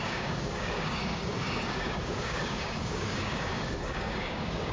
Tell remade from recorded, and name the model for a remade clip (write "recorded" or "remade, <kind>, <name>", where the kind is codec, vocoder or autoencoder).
remade, codec, DAC